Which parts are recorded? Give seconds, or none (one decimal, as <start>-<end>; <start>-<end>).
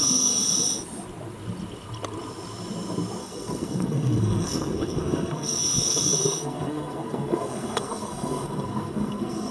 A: 0.4-3.2